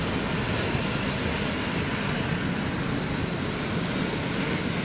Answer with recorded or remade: recorded